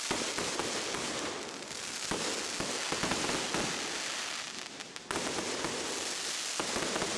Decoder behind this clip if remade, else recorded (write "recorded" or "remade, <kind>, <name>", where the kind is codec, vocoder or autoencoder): recorded